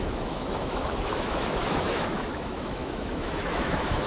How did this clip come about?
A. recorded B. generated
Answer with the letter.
B